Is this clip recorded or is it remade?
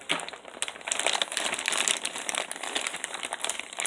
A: recorded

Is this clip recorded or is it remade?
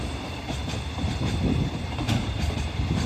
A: remade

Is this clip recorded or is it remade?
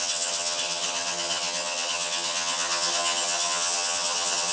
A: remade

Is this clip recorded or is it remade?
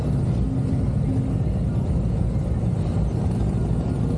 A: recorded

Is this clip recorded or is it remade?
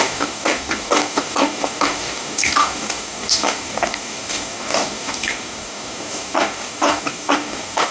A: remade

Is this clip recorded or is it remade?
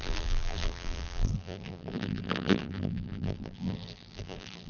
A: remade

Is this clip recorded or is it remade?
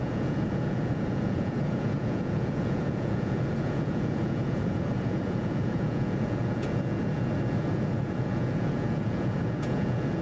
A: remade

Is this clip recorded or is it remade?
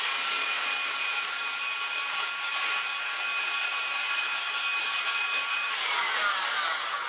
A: remade